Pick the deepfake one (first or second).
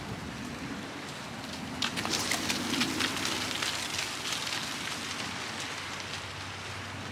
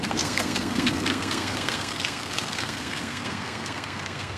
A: second